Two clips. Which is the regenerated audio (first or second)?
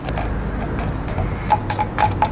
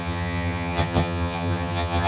second